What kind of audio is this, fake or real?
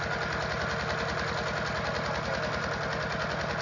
real